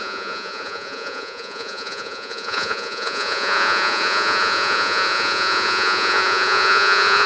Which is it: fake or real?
fake